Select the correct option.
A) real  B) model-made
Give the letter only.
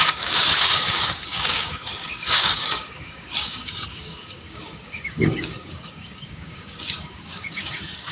B